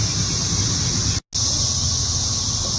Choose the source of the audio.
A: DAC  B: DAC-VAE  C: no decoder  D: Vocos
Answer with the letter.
C